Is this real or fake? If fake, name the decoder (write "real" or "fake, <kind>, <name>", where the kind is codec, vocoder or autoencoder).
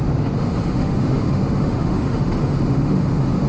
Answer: fake, autoencoder, DAC-VAE